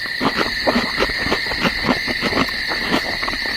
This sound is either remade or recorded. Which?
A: recorded